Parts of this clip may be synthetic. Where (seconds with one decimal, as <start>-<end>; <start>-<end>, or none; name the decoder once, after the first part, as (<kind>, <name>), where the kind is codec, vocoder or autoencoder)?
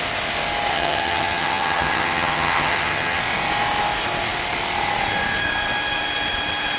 0.7-3.2 (vocoder, HiFi-GAN)